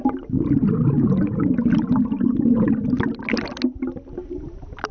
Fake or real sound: real